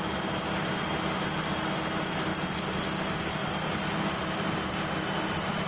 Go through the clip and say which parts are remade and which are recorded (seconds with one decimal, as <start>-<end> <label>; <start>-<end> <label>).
0.0-5.7 recorded